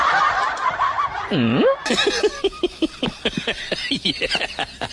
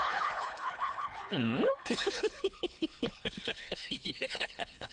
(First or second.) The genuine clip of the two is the first